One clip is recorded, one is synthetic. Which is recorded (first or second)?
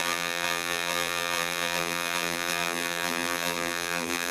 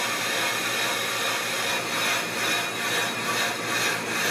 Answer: second